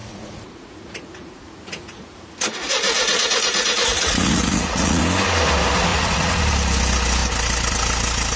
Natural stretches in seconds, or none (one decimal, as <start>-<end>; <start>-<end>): 5.0-5.9; 6.4-8.4